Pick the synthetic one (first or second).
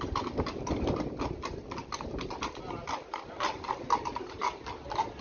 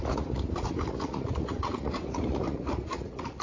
second